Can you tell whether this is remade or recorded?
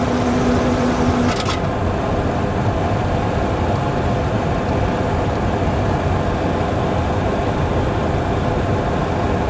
recorded